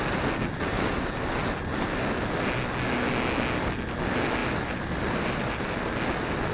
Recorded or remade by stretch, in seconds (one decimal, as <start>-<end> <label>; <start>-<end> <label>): 0.0-4.4 recorded; 4.4-5.6 remade; 5.6-6.5 recorded